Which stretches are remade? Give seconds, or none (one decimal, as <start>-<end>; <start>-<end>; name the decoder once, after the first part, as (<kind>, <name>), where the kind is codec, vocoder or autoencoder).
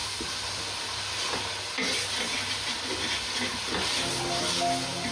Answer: 3.5-4.4 (vocoder, BigVGAN v2)